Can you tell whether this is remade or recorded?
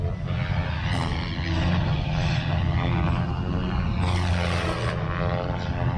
recorded